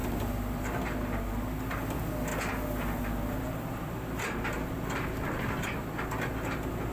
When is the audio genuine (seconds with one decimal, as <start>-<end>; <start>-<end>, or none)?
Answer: 0.0-6.9